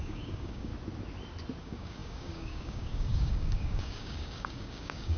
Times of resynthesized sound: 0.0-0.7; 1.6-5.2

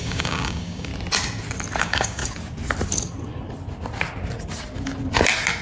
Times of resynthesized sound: 0.0-0.9; 1.8-2.2

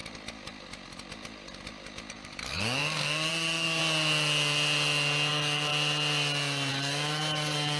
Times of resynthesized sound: 2.1-3.8; 5.3-5.7; 6.7-7.8

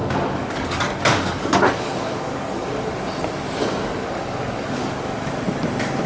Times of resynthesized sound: 0.0-2.9; 3.6-5.3

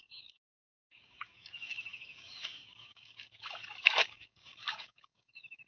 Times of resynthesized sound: 0.0-5.7

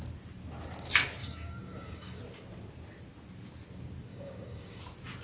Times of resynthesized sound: 1.2-2.2; 4.1-4.8